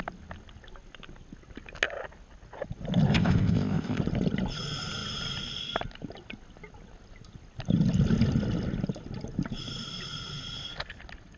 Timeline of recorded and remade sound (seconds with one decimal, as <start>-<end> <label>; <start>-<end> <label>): 0.0-3.1 recorded; 3.1-4.0 remade; 4.0-11.4 recorded